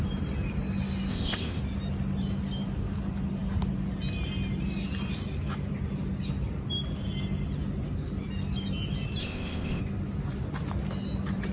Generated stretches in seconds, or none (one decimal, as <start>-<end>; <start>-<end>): 1.1-1.6; 9.2-9.8